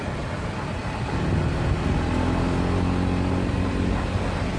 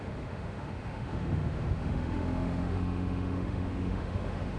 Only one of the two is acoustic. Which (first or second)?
first